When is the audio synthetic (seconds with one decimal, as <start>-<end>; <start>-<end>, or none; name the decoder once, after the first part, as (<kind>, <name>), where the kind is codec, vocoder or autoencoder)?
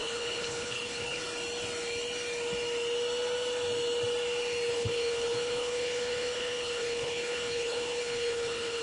0.0-1.2 (codec, HILCodec); 4.7-8.8